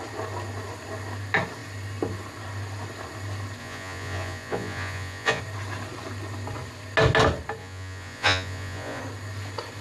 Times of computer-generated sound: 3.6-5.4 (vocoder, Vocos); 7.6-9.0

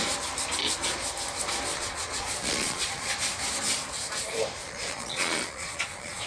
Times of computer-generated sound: 1.7-3.1 (vocoder, Vocos); 4.6-6.3

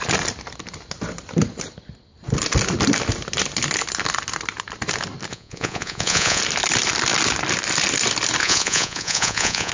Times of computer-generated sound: 5.3-6.4 (vocoder, Vocos); 8.4-9.7

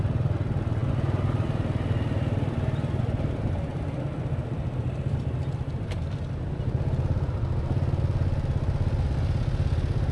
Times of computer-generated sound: none

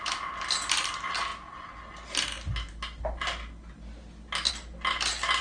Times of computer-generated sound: none